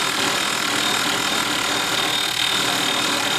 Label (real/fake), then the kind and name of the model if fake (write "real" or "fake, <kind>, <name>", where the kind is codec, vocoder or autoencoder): real